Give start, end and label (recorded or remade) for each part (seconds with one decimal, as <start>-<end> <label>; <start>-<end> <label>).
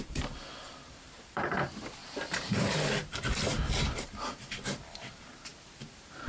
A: 0.0-6.3 remade